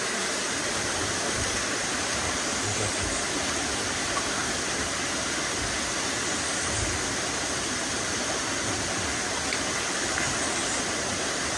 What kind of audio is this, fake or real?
real